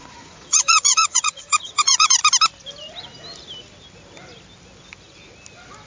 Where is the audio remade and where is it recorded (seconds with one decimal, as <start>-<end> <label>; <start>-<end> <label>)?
0.0-2.2 remade; 2.2-5.9 recorded